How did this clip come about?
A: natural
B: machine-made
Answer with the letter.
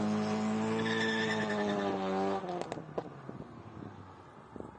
A